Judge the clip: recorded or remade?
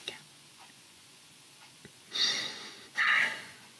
remade